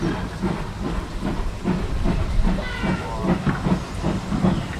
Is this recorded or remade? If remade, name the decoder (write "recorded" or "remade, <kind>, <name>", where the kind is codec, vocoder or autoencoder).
recorded